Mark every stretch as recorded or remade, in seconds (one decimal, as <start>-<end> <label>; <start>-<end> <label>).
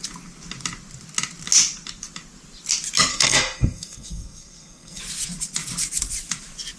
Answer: 0.0-3.1 recorded; 3.1-5.0 remade; 5.0-6.8 recorded